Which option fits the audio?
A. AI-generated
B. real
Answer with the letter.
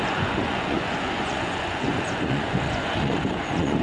A